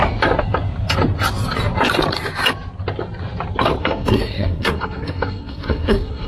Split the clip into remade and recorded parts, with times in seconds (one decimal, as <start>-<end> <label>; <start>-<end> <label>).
0.0-3.8 recorded; 3.8-6.3 remade